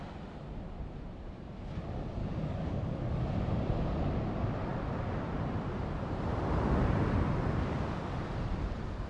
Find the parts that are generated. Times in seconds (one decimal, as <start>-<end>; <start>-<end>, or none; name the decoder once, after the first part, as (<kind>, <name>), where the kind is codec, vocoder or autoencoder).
2.2-3.2 (codec, DAC)